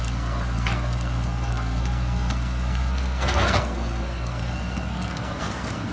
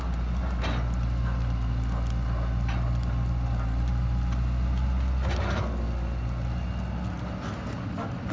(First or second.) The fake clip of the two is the first